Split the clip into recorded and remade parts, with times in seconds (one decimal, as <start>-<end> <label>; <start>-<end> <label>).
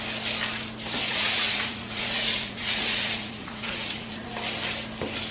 0.0-1.1 recorded; 1.1-4.3 remade; 4.3-5.3 recorded